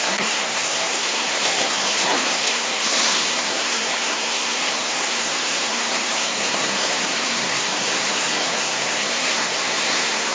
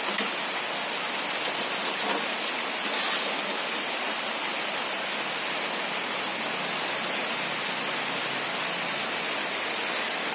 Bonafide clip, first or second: second